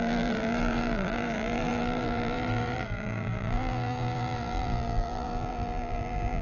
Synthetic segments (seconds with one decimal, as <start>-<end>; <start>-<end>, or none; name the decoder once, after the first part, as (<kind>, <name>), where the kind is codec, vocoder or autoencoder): 0.0-6.4 (vocoder, BigVGAN v2)